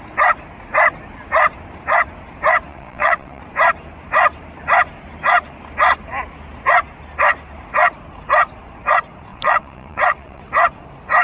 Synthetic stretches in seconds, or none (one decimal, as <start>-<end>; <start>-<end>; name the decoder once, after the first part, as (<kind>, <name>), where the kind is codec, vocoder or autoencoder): 2.7-3.4 (vocoder, WaveNeXt); 9.3-10.4